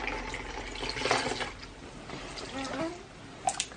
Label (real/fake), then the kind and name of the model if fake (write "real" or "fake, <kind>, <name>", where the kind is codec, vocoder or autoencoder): real